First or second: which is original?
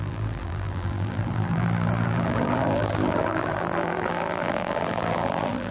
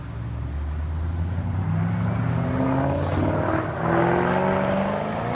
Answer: second